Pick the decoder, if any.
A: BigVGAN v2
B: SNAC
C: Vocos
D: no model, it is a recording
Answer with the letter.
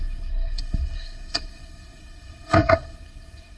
B